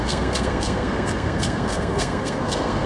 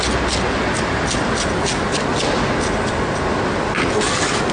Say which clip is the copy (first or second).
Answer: first